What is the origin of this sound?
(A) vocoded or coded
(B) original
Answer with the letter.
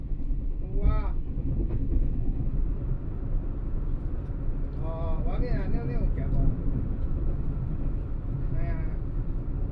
B